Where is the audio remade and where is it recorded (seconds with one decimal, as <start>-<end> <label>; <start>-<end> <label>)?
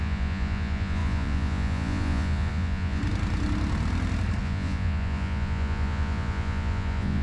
0.0-3.0 remade; 3.0-4.4 recorded; 4.4-7.2 remade